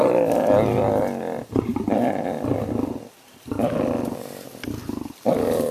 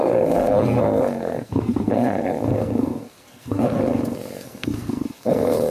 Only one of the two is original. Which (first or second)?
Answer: first